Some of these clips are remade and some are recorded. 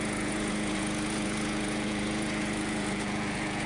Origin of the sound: remade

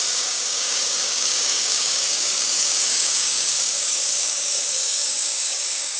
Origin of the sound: remade